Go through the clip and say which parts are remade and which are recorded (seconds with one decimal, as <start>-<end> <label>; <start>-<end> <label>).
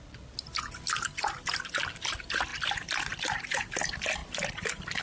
0.0-2.5 recorded; 2.5-3.6 remade; 3.6-5.0 recorded